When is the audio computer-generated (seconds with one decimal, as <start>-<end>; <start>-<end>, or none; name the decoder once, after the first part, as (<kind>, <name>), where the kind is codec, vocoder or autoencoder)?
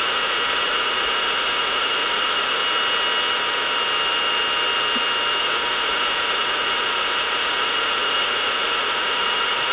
0.0-2.6 (vocoder, Vocos); 5.4-9.7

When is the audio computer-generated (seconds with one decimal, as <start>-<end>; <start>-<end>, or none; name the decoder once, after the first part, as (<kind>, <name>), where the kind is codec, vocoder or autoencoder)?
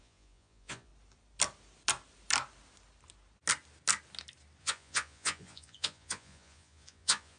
0.0-0.9 (vocoder, Vocos); 4.6-7.4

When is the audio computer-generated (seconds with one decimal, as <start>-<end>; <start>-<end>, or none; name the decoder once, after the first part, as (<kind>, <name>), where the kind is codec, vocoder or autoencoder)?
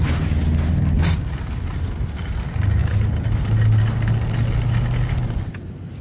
none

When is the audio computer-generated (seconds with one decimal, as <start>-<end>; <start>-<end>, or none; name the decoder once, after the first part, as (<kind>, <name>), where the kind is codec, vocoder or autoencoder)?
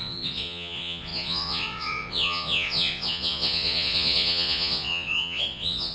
0.0-5.9 (vocoder, Vocos)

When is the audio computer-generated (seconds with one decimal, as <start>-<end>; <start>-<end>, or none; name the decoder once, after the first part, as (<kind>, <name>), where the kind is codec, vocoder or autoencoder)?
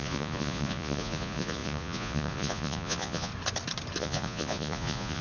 0.0-3.3 (vocoder, Vocos); 4.0-5.2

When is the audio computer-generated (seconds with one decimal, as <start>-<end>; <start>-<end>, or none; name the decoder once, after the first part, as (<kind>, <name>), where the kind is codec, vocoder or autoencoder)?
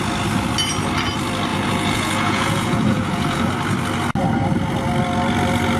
1.5-3.5 (vocoder, Vocos)